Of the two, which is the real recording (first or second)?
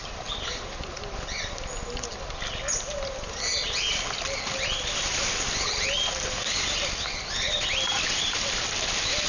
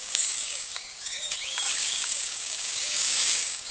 first